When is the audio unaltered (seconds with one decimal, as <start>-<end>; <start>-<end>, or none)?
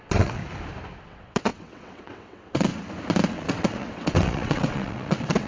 0.4-1.0; 2.7-3.3